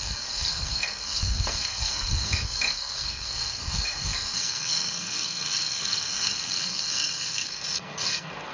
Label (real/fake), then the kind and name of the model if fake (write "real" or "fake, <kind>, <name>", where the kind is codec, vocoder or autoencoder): fake, codec, SNAC